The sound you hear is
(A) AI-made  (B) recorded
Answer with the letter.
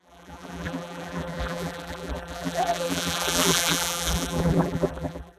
A